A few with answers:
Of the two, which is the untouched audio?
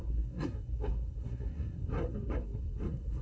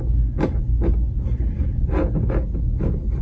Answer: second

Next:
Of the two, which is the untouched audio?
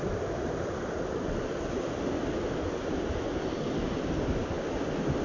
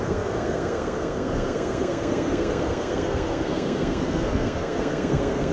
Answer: first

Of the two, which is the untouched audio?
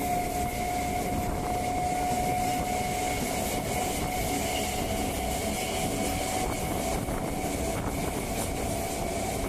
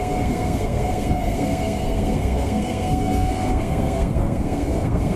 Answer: first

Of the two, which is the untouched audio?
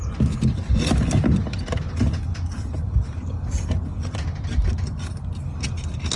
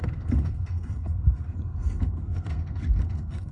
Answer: first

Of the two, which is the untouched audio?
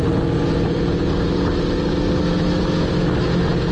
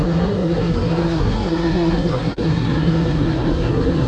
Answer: first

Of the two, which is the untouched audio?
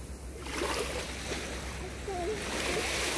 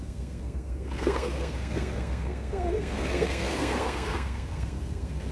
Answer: first